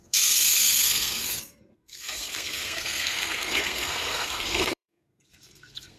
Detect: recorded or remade remade